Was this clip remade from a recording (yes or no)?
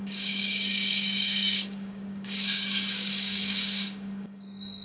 yes